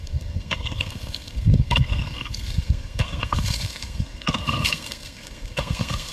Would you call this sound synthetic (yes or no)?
yes